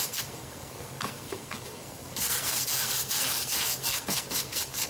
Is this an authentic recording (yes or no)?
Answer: no